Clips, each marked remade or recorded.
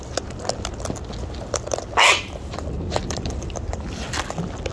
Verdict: recorded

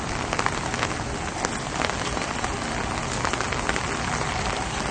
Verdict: recorded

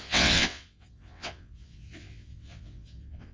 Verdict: remade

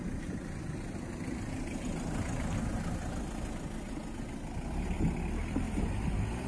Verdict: recorded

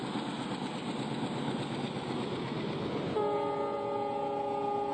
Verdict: recorded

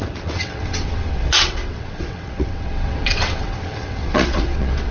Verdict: remade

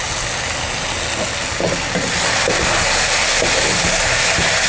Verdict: recorded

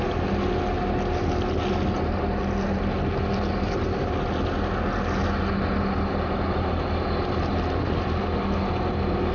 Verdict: recorded